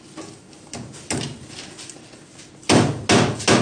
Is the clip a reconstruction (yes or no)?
no